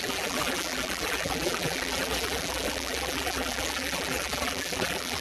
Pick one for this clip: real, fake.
fake